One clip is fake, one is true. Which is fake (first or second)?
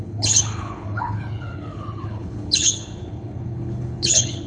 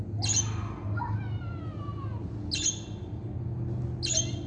first